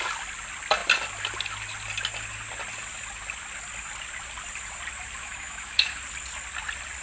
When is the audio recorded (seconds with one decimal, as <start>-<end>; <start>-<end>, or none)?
0.0-5.2; 6.0-7.0